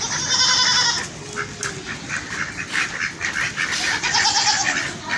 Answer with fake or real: real